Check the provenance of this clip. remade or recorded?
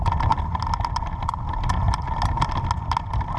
recorded